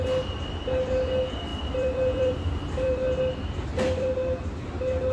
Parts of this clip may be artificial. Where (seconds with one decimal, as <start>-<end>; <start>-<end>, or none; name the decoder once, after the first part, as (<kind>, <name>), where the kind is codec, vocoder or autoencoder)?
1.5-3.2 (vocoder, BigVGAN v2); 3.6-4.1